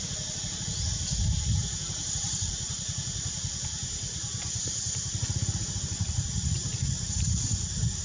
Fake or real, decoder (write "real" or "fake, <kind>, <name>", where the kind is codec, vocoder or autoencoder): real